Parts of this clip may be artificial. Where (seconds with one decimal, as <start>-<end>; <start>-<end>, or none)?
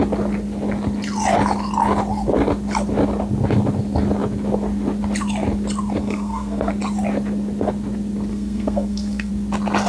6.0-6.7; 8.3-9.3